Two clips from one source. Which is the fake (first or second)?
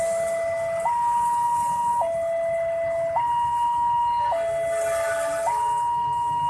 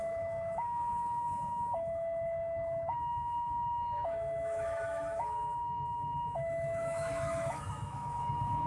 second